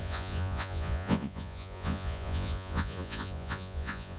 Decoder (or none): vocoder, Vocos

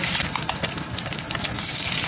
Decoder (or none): none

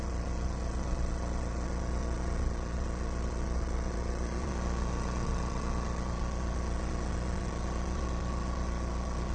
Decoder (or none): vocoder, Vocos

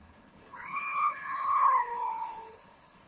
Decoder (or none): codec, HILCodec